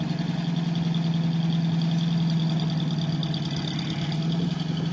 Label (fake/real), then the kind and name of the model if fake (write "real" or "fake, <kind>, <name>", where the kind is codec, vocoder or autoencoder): real